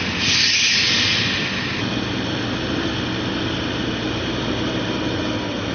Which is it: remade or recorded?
recorded